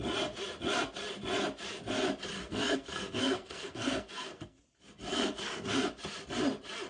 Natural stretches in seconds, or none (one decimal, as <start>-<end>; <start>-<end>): 0.0-2.4; 4.6-5.1; 5.9-6.9